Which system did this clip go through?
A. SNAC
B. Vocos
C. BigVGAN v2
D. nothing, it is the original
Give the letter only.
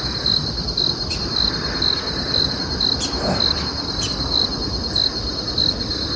D